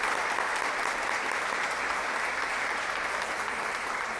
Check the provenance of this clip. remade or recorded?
recorded